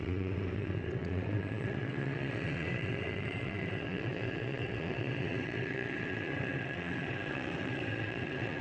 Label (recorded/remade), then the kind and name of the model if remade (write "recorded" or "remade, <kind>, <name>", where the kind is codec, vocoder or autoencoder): remade, vocoder, WaveNeXt